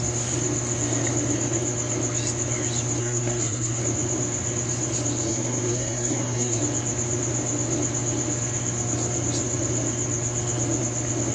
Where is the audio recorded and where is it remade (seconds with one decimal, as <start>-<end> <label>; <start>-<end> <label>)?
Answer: 0.0-3.0 recorded; 3.0-3.8 remade; 3.8-5.3 recorded; 5.3-6.6 remade; 6.6-11.3 recorded